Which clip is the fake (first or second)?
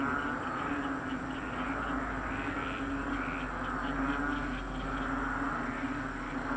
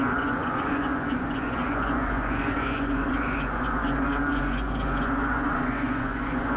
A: second